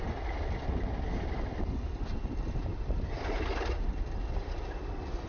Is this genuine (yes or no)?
yes